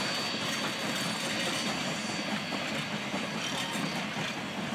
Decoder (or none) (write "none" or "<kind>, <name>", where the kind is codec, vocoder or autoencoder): none